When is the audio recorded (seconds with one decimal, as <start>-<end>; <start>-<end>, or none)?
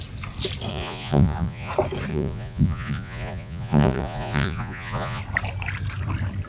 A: 0.0-0.7; 1.7-2.1; 5.2-6.5